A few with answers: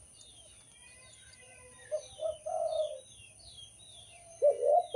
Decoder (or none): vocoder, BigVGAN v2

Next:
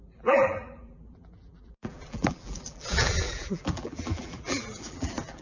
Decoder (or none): vocoder, BigVGAN v2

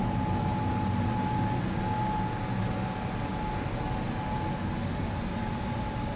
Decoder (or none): none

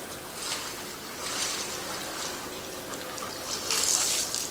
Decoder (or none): none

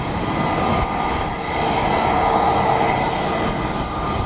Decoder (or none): none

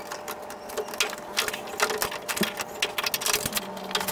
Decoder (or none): none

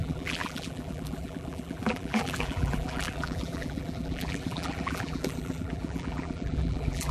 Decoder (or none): vocoder, BigVGAN v2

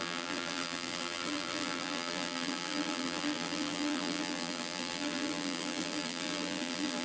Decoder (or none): vocoder, BigVGAN v2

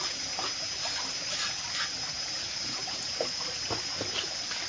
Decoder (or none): none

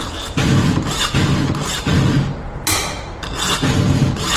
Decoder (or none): none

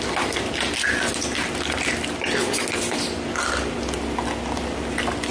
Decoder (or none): none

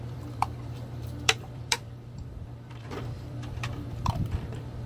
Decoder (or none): vocoder, BigVGAN v2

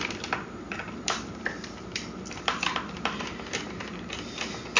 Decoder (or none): vocoder, BigVGAN v2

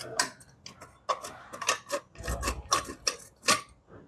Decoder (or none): none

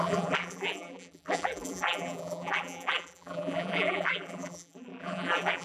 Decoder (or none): vocoder, BigVGAN v2